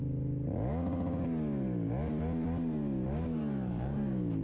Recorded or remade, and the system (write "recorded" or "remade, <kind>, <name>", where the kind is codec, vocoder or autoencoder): recorded